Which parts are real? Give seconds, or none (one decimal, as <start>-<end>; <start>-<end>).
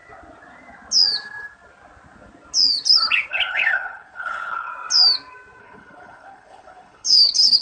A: 0.0-3.3; 4.7-5.6